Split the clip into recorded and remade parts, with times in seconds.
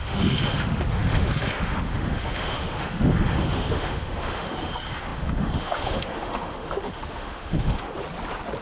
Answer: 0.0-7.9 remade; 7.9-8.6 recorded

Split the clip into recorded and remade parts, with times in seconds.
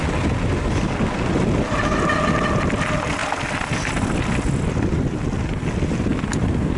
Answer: 0.0-6.8 recorded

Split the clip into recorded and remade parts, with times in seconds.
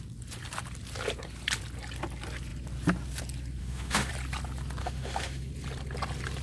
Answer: 0.0-3.6 recorded; 3.6-4.1 remade; 4.1-4.8 recorded; 4.8-5.5 remade; 5.5-6.4 recorded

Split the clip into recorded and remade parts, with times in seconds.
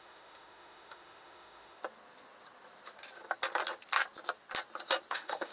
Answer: 0.0-1.8 remade; 1.8-5.1 recorded; 5.1-5.5 remade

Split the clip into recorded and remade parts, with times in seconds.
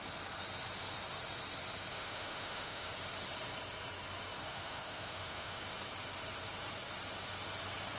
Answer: 0.0-1.9 recorded; 1.9-2.9 remade; 2.9-4.4 recorded; 4.4-5.6 remade; 5.6-8.0 recorded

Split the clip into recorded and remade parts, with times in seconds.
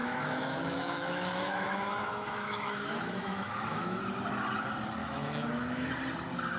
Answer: 0.0-4.0 remade; 4.0-5.0 recorded; 5.0-5.9 remade; 5.9-6.6 recorded